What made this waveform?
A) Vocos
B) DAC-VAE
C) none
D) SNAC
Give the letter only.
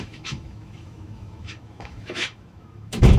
B